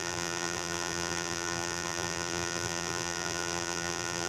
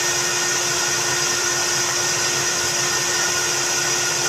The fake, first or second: first